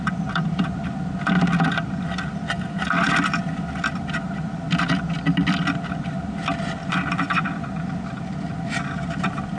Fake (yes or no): yes